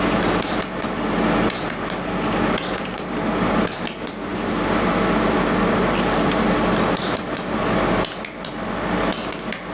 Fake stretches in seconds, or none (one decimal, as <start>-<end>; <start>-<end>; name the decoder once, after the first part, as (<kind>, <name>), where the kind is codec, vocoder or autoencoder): none